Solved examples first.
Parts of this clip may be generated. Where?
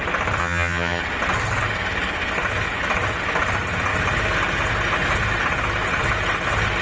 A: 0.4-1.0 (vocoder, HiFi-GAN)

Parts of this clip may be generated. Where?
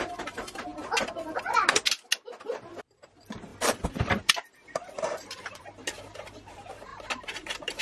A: 3.5-5.6 (vocoder, BigVGAN v2); 6.9-7.8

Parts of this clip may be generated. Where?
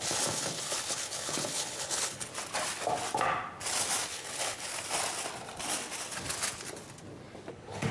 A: 0.0-2.3 (codec, HILCodec); 4.1-4.7; 7.5-7.9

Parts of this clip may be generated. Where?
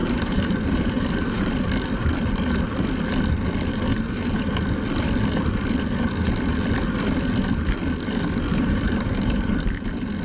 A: 0.0-1.5 (vocoder, BigVGAN v2); 3.9-4.5; 8.5-9.5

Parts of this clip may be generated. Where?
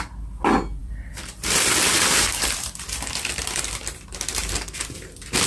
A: 0.8-4.1 (vocoder, BigVGAN v2)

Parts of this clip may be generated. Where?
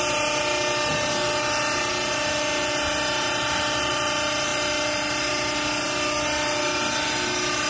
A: none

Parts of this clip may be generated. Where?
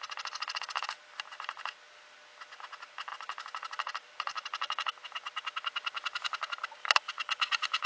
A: none